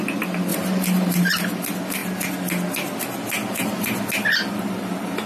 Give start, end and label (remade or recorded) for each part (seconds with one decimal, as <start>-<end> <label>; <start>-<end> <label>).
0.0-0.5 recorded; 0.5-1.3 remade; 1.3-5.3 recorded